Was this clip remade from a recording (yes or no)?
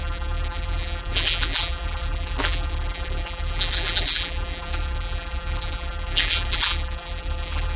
yes